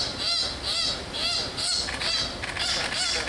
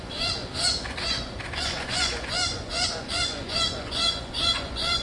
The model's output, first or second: second